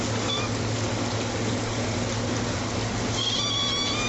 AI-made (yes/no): yes